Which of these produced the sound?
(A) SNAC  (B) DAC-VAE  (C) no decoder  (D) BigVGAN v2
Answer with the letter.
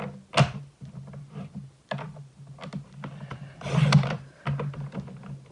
C